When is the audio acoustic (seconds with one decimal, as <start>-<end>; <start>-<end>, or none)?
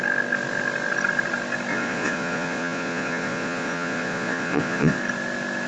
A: 0.0-1.7; 5.0-5.7